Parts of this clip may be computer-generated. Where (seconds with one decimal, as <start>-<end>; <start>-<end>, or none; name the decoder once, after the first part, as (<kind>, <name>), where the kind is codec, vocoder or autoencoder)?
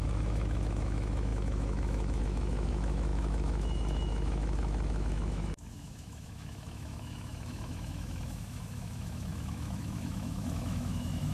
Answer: 0.0-11.3 (autoencoder, DAC-VAE)